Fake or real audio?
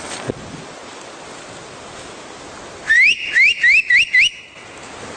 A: real